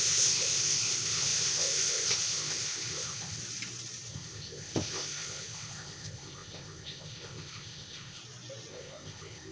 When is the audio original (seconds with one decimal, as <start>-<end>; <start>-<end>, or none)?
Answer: 3.4-4.1; 8.2-8.7